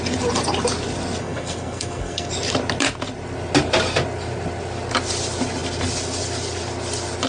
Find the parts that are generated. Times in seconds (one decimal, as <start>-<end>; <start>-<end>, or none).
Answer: 1.2-2.3